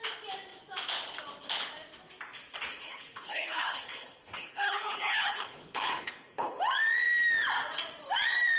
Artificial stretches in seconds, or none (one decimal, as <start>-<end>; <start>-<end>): 2.7-6.6